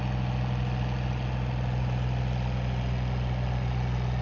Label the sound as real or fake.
real